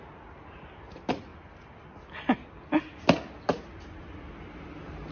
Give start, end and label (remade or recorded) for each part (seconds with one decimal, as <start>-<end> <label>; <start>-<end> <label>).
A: 0.0-5.1 recorded